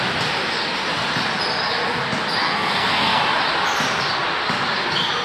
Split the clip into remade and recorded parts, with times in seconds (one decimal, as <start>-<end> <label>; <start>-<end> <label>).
0.0-2.4 recorded; 2.4-3.2 remade; 3.2-5.2 recorded